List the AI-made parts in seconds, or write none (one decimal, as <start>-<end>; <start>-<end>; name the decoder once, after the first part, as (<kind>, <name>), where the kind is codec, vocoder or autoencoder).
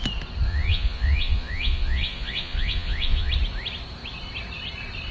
0.5-3.3 (vocoder, Vocos)